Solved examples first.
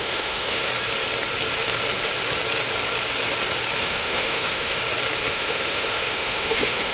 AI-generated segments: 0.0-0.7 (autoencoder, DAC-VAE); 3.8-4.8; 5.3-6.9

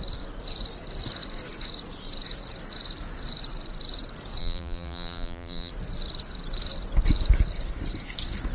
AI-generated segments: 4.4-5.7 (vocoder, BigVGAN v2)

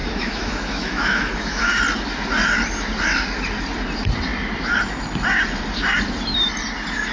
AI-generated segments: 0.0-1.8 (autoencoder, DAC-VAE)

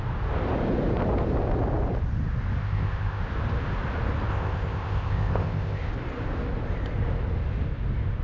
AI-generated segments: 2.6-3.2 (codec, ZipCodec); 4.3-5.9

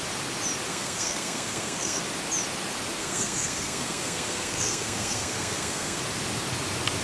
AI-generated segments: 0.7-2.0 (codec, SNAC); 3.0-6.0

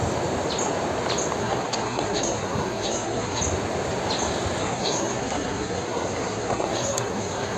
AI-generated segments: 1.4-3.4 (codec, SNAC); 4.6-7.6